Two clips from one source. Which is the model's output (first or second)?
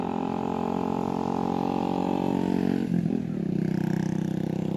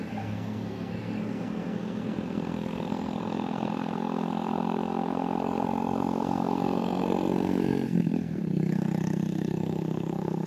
second